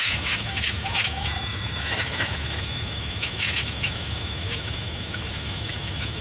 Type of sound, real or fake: fake